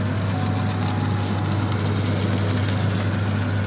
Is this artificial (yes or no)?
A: no